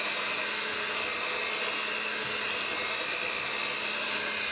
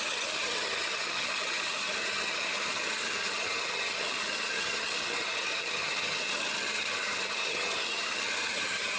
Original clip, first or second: first